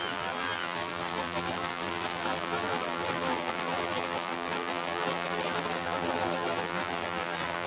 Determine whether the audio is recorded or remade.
remade